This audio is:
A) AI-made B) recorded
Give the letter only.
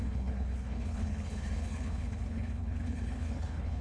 A